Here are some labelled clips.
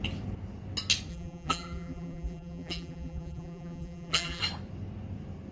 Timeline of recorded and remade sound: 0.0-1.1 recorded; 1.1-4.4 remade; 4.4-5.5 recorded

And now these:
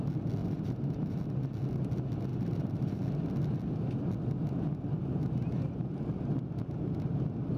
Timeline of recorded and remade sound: 0.0-0.4 recorded; 0.4-1.2 remade; 1.2-2.3 recorded; 2.3-3.0 remade; 3.0-5.0 recorded; 5.0-6.3 remade; 6.3-7.6 recorded

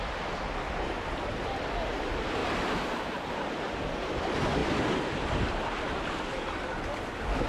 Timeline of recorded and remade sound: 0.0-7.5 recorded

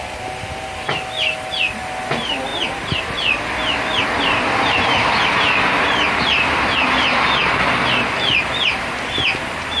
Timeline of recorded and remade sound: 0.0-2.5 recorded; 2.5-3.0 remade; 3.0-9.8 recorded

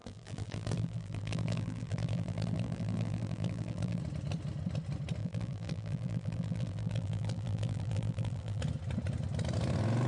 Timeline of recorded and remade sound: 0.0-4.0 remade; 4.0-5.2 recorded; 5.2-8.6 remade; 8.6-10.1 recorded